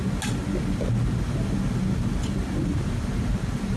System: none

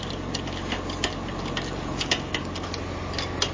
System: none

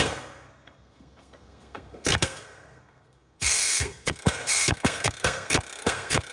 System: codec, SNAC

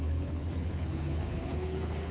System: codec, HILCodec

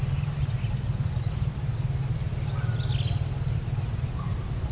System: none